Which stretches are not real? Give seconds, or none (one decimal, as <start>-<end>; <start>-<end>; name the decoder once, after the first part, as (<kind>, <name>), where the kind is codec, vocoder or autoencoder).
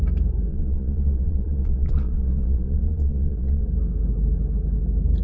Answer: 0.5-3.6 (vocoder, Vocos)